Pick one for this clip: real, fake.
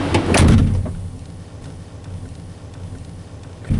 real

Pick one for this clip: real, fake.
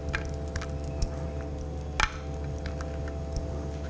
real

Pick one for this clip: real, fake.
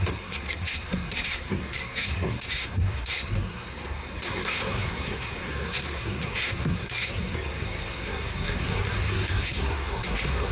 fake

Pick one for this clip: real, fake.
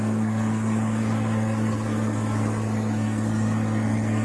fake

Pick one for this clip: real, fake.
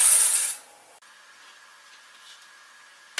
real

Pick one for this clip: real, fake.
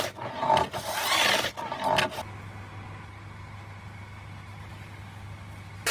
real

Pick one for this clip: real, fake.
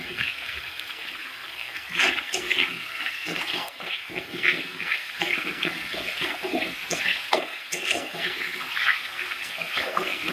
fake